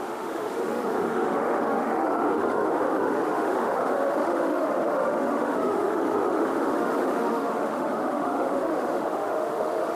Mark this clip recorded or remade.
remade